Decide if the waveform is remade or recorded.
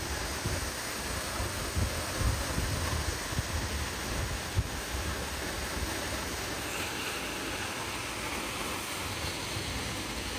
recorded